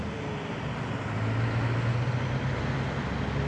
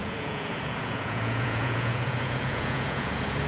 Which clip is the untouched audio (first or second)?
first